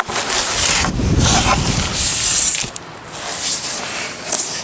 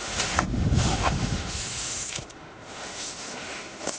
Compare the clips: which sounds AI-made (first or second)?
second